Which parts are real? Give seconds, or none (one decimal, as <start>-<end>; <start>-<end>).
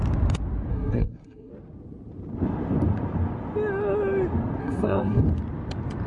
0.0-0.7; 1.5-4.6; 5.2-6.1